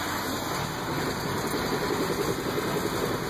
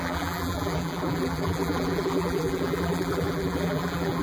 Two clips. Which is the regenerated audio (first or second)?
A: second